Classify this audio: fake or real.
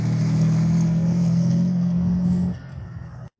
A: fake